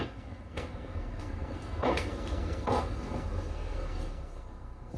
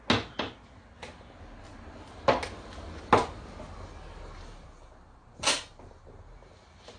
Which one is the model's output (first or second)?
first